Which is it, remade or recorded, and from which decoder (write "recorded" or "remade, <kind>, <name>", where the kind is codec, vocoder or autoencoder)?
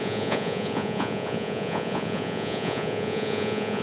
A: remade, vocoder, Vocos